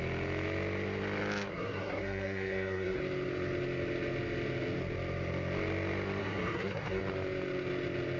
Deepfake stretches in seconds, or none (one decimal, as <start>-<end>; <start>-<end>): 1.5-3.0; 6.2-7.0